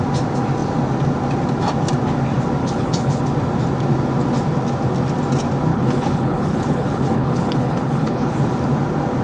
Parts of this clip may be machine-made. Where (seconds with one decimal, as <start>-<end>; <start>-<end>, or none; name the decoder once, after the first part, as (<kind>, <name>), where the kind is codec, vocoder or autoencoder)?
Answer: 2.6-3.2 (codec, HILCodec); 5.7-8.4